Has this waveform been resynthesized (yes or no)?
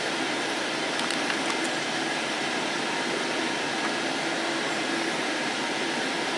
no